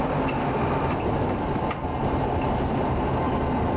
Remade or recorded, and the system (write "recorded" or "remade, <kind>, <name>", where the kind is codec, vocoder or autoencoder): recorded